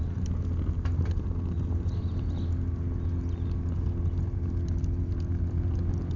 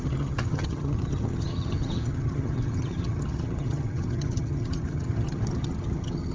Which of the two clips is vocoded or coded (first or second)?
second